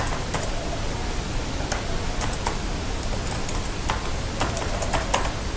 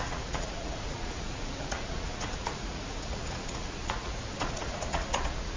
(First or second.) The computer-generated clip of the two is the second